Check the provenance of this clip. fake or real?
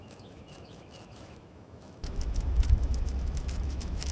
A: fake